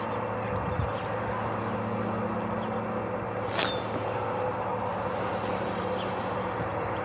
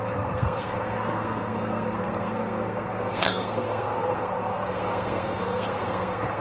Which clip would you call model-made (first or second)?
second